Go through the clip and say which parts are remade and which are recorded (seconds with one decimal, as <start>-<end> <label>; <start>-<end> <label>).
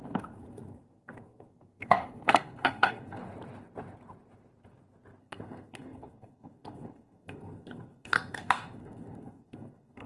0.0-3.2 remade; 3.2-5.2 recorded; 5.2-10.1 remade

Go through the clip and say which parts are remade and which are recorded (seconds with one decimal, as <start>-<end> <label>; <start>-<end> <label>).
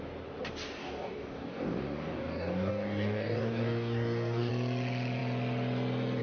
0.0-0.8 recorded; 0.8-4.5 remade; 4.5-6.2 recorded